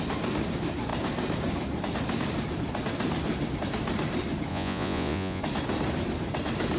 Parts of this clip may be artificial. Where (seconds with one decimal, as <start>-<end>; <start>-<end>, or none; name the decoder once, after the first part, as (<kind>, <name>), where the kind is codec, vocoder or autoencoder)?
4.5-5.4 (vocoder, Vocos)